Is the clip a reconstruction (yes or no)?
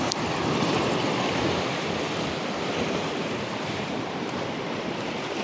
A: yes